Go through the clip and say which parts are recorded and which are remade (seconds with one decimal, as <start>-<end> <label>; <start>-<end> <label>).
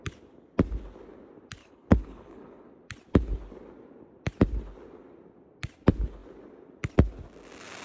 0.0-1.6 recorded; 1.6-2.7 remade; 2.7-7.8 recorded